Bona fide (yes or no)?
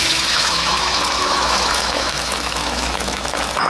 no